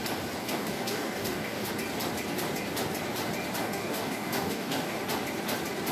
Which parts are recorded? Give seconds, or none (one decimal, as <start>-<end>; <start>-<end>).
0.0-0.4; 1.7-3.6; 5.0-5.9